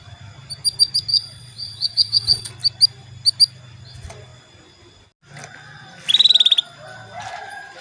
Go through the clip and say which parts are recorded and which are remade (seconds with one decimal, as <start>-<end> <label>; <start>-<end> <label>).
0.0-1.1 recorded; 1.1-2.5 remade; 2.5-7.8 recorded